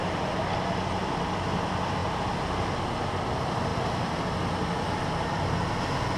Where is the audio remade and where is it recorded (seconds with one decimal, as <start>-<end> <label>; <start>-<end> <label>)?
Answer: 0.0-6.2 recorded